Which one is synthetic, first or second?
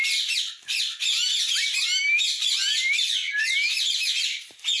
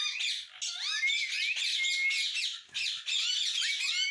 first